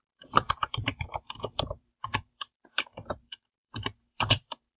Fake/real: fake